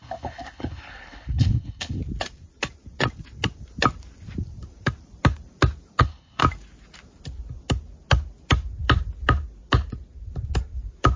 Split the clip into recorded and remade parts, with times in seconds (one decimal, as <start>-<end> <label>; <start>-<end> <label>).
0.0-2.0 remade; 2.0-6.0 recorded; 6.0-6.4 remade; 6.4-11.2 recorded